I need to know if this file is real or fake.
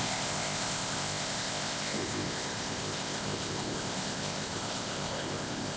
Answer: fake